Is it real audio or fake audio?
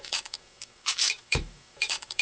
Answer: fake